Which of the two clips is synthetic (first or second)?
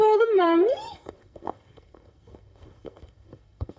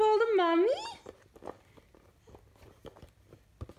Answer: first